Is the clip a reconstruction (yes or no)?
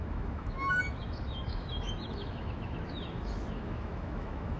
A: yes